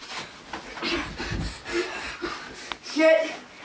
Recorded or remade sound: recorded